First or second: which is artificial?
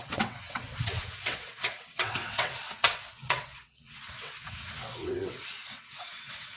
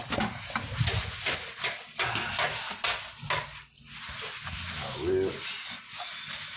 first